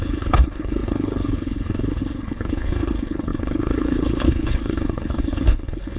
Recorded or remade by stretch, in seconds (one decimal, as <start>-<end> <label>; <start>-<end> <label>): 0.0-6.0 remade